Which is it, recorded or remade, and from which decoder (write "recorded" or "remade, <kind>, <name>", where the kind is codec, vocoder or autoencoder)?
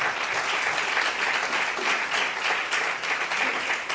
recorded